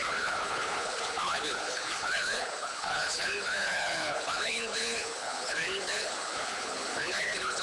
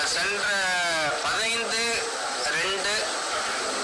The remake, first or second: first